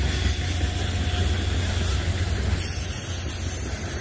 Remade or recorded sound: recorded